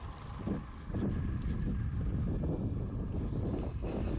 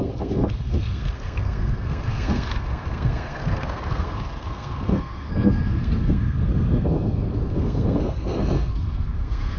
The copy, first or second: second